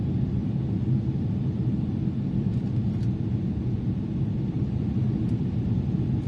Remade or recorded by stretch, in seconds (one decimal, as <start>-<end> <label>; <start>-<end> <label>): 0.0-0.4 remade; 0.4-1.2 recorded; 1.2-2.5 remade; 2.5-5.6 recorded; 5.6-6.3 remade